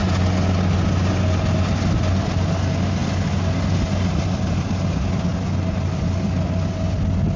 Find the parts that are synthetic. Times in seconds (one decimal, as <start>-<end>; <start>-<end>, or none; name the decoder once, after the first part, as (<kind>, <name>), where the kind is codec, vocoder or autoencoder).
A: none